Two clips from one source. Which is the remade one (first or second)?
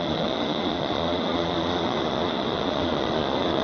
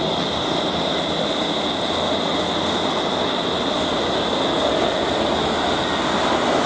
first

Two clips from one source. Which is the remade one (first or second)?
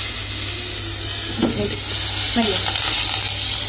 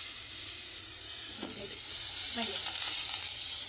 second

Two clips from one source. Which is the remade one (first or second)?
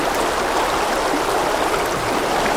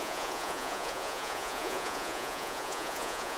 second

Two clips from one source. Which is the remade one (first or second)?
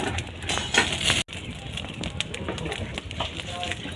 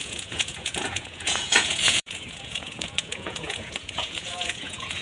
second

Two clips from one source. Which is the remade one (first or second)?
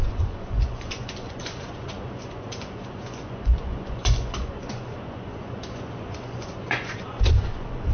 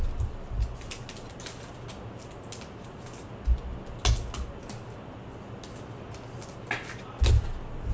first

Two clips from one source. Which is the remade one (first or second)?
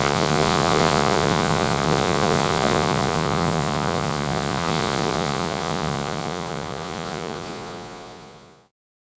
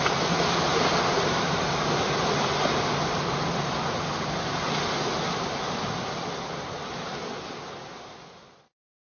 first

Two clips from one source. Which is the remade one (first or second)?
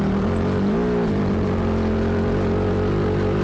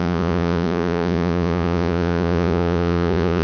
second